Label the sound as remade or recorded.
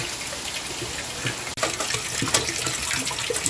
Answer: recorded